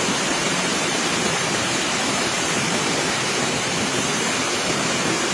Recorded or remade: remade